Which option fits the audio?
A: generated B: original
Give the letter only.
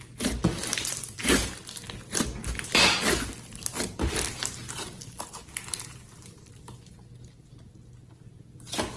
B